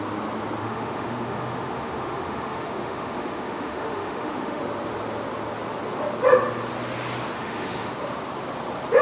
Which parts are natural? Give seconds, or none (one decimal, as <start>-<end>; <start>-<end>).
0.0-0.6; 4.6-7.4; 7.9-9.0